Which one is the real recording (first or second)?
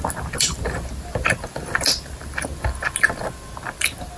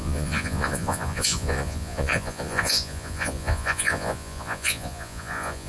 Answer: first